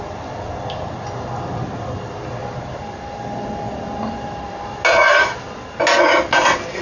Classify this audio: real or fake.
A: real